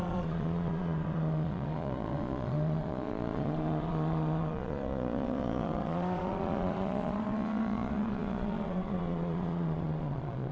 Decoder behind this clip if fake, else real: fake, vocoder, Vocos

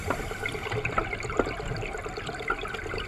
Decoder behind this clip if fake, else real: real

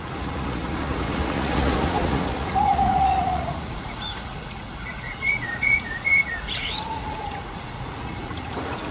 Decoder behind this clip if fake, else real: fake, vocoder, Vocos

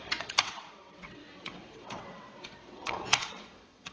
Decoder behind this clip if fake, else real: fake, vocoder, WaveNeXt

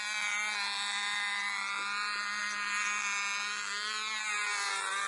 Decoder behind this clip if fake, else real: real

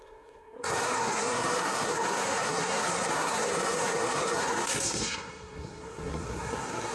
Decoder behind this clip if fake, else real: fake, codec, SNAC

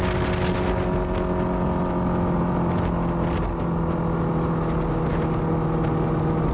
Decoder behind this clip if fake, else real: real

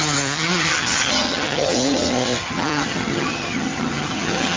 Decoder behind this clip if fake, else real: fake, vocoder, HiFi-GAN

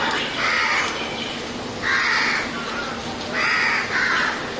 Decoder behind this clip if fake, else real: real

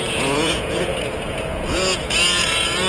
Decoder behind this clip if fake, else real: fake, vocoder, Vocos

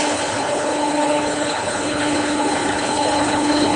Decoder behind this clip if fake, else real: fake, codec, HILCodec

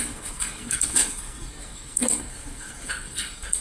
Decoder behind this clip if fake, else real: fake, codec, SNAC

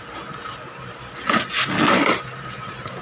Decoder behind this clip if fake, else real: real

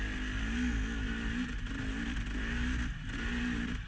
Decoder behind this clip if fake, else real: real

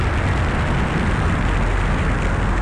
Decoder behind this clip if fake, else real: real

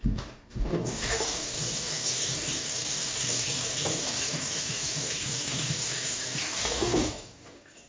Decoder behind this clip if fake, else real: fake, codec, DAC